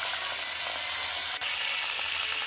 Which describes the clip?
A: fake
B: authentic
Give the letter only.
B